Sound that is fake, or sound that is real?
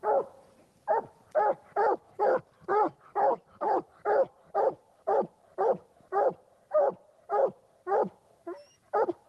real